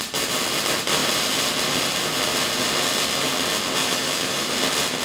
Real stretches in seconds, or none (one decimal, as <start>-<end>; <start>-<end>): 0.0-3.8; 4.5-5.0